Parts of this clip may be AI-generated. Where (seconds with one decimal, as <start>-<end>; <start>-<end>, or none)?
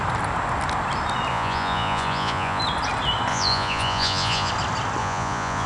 1.3-2.6; 3.3-4.5; 5.0-5.7